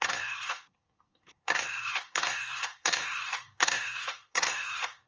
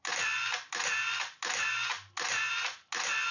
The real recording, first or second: second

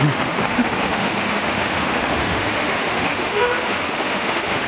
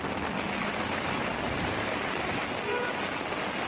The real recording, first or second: second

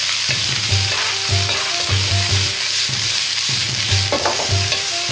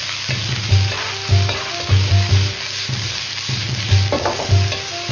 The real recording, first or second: second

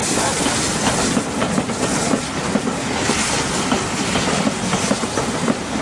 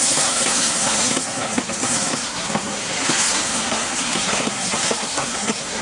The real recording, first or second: first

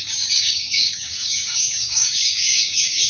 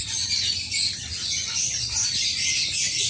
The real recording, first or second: second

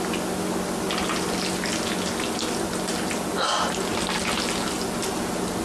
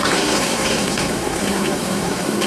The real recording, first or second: first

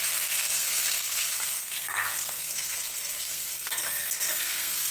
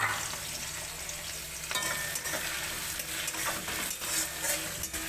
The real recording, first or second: second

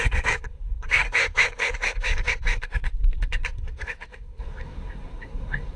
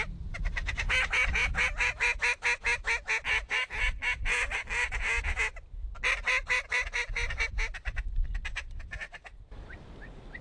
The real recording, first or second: second